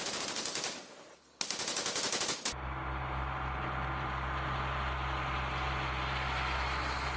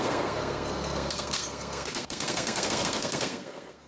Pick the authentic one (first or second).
first